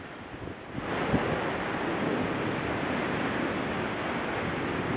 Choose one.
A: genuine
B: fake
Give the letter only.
A